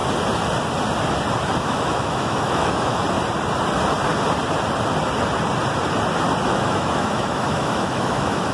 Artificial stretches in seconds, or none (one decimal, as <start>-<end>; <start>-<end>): 1.6-3.0; 6.5-8.5

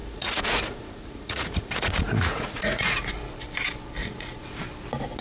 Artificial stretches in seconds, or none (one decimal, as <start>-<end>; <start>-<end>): 0.0-3.1; 4.0-4.6

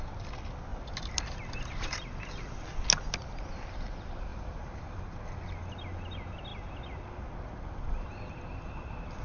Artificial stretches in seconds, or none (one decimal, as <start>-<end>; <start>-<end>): 4.3-5.3